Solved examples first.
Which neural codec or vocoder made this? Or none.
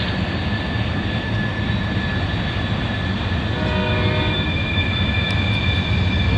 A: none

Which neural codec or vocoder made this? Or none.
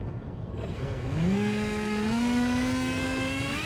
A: codec, SNAC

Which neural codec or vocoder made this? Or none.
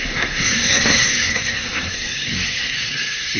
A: codec, SNAC